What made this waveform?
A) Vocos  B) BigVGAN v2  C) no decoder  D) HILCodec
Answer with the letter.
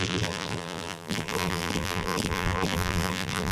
B